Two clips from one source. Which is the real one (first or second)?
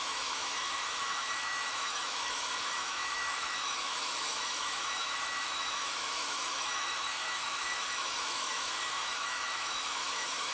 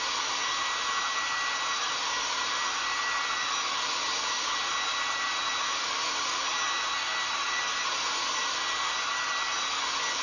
second